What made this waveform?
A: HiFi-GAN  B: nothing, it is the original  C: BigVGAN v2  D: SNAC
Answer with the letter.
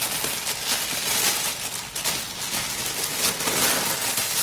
B